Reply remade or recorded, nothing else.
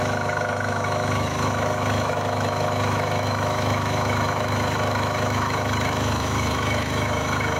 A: remade